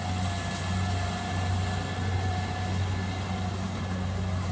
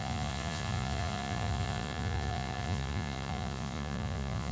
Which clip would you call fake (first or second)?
second